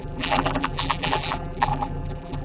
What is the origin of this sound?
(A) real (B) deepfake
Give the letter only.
B